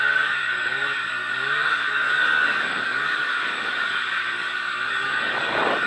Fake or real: fake